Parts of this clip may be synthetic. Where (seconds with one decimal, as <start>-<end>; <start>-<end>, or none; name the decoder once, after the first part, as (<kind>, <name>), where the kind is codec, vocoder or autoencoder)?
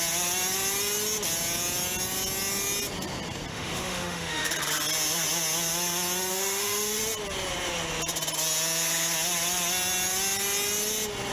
3.5-4.5 (autoencoder, DAC-VAE); 6.3-7.0